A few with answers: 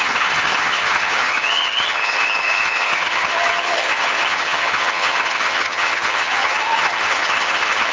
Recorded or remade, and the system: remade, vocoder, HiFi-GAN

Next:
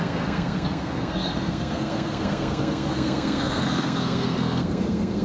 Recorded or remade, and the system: remade, codec, SNAC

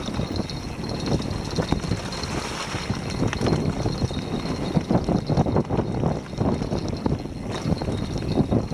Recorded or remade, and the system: recorded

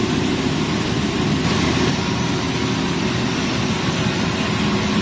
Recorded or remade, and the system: recorded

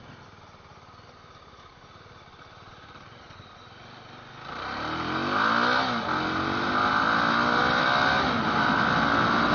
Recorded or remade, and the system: recorded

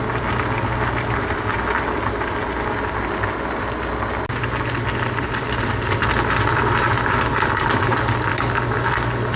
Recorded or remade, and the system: recorded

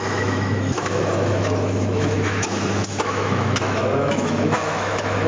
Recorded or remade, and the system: remade, autoencoder, DAC-VAE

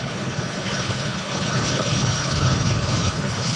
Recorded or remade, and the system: remade, codec, HILCodec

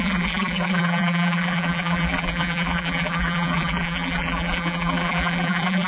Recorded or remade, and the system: remade, vocoder, BigVGAN v2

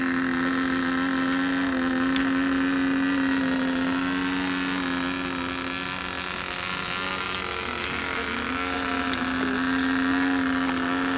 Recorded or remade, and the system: recorded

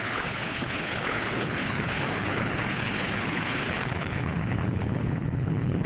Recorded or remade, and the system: remade, codec, HILCodec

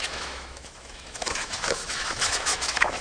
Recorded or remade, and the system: remade, autoencoder, DAC-VAE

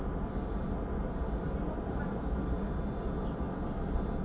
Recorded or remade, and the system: recorded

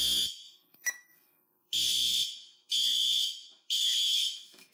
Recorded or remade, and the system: remade, autoencoder, DAC-VAE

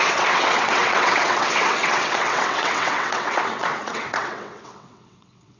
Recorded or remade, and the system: remade, vocoder, WaveNeXt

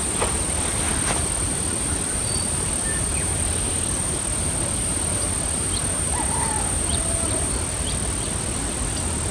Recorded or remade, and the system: recorded